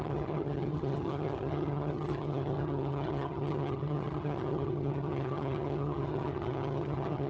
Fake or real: fake